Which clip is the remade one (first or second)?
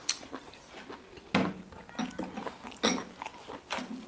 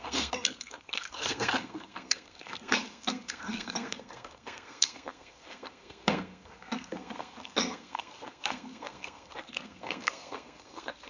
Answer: second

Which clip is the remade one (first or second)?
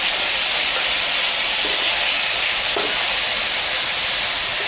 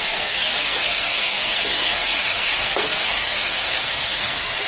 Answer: second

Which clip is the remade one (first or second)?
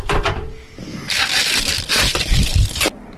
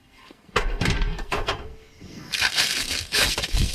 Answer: second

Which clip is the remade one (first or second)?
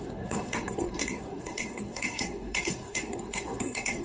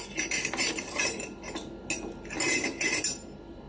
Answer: first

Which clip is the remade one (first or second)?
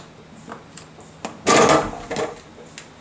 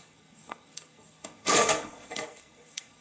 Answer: second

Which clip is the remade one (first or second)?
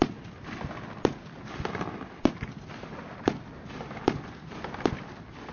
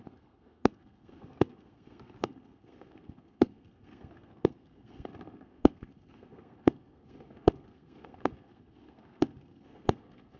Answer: second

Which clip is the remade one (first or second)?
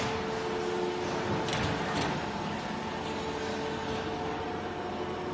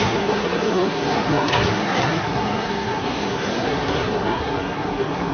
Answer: second